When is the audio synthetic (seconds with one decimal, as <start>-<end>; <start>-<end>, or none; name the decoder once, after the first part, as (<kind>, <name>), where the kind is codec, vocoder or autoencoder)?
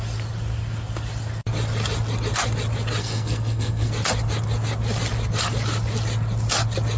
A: 3.0-3.9 (codec, SNAC)